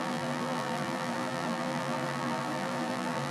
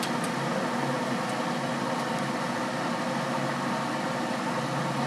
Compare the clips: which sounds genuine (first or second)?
second